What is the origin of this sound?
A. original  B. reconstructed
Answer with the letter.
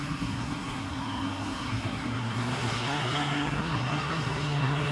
B